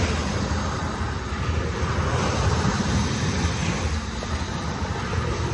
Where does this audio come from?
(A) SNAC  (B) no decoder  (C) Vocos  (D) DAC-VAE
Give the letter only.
B